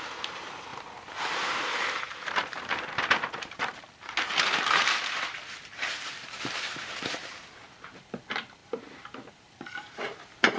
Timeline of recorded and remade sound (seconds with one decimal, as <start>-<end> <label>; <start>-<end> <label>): 0.0-0.7 remade; 0.7-1.2 recorded; 1.2-8.6 remade; 8.6-9.3 recorded; 9.3-10.6 remade